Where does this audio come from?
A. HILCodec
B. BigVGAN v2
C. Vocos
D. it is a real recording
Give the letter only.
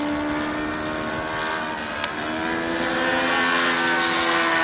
D